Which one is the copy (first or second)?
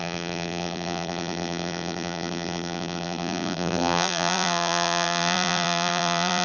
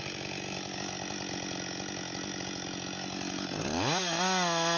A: first